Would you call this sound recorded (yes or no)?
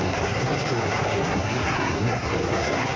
no